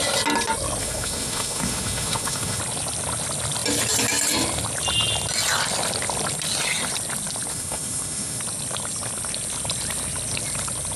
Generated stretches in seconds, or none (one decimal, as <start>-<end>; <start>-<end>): 0.8-2.6; 7.5-8.4